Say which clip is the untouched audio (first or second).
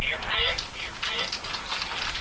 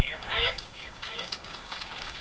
first